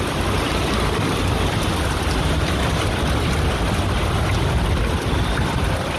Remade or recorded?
recorded